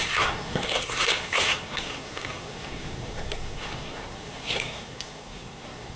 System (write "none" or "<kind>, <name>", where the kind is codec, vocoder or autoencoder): codec, SNAC